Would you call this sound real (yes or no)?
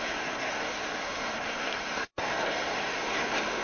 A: no